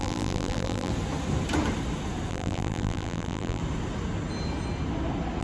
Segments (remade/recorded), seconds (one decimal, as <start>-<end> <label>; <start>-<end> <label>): 0.0-0.9 remade; 0.9-2.3 recorded; 2.3-3.6 remade; 3.6-5.4 recorded